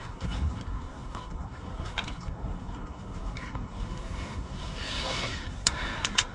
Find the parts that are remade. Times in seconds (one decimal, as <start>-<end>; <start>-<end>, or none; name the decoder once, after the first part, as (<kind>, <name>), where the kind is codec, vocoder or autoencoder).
0.0-6.3 (codec, SNAC)